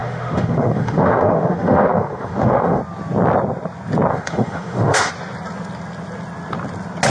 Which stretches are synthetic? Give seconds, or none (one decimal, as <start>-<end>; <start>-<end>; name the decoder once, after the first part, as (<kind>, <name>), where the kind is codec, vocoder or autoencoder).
0.0-2.8 (autoencoder, DAC-VAE); 4.1-5.1